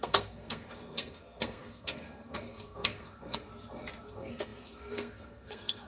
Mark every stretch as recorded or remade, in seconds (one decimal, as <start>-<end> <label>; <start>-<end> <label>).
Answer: 0.0-3.5 remade; 3.5-4.1 recorded; 4.1-5.9 remade